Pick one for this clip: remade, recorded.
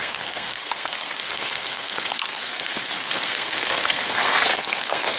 remade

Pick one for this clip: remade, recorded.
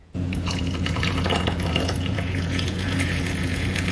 remade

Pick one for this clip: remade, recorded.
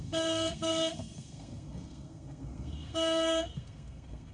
remade